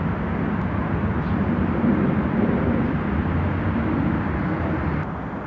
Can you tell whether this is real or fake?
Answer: real